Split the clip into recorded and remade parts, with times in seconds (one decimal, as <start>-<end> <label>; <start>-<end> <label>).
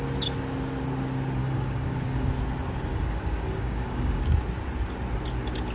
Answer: 0.0-1.4 recorded; 1.4-2.3 remade; 2.3-2.9 recorded; 2.9-4.4 remade; 4.4-5.7 recorded